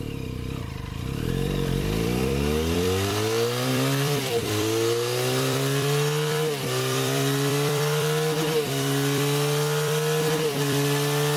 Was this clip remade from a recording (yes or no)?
yes